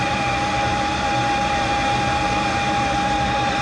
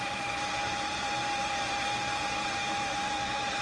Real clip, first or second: first